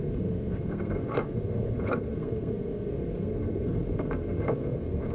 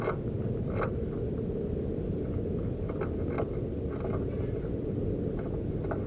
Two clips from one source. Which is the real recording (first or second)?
second